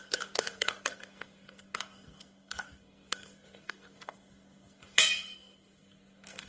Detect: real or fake fake